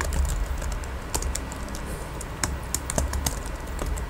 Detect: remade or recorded recorded